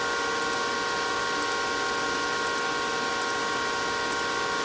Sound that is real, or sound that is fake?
real